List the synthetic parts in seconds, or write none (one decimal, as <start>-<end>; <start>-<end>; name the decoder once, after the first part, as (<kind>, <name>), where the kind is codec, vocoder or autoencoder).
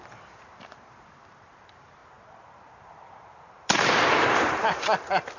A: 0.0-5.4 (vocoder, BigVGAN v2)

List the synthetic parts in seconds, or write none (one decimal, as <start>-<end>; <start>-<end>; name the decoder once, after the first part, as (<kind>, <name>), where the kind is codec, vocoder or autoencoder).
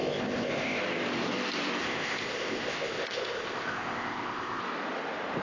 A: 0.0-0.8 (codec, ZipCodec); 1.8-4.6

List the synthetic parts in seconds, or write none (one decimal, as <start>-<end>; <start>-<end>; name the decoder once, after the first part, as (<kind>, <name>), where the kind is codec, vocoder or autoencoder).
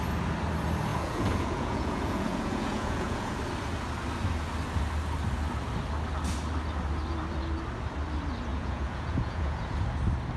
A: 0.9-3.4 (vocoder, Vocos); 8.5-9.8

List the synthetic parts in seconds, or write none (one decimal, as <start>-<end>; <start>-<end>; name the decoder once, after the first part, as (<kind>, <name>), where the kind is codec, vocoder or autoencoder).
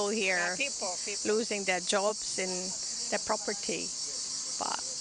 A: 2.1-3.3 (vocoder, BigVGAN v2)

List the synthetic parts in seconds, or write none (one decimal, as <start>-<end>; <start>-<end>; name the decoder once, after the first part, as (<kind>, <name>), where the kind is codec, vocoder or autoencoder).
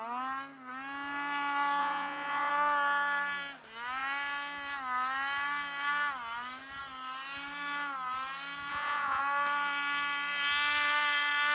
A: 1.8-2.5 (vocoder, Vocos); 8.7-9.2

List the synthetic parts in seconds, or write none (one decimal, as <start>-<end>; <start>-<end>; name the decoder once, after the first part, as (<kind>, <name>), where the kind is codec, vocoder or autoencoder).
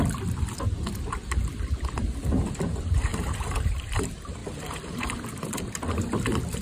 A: 3.1-3.8 (vocoder, BigVGAN v2); 4.4-5.6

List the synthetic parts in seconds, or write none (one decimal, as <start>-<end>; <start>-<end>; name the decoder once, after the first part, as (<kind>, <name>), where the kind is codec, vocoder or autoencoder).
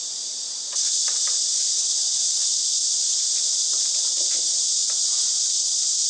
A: none